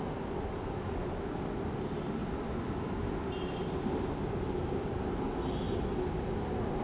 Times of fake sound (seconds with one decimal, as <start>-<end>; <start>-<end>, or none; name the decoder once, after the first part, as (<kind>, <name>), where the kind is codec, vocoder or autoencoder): none